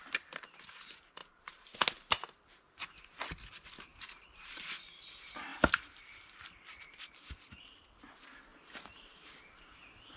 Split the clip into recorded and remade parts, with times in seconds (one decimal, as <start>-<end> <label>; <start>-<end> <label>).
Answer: 0.0-1.2 recorded; 1.2-1.7 remade; 1.7-3.9 recorded; 3.9-4.6 remade; 4.6-8.5 recorded; 8.5-9.4 remade; 9.4-10.2 recorded